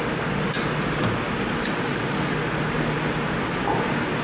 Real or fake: real